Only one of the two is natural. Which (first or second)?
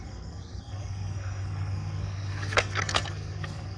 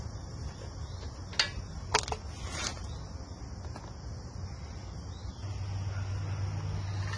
second